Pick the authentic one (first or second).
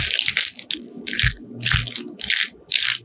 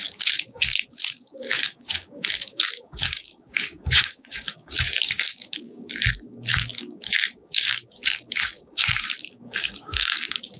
first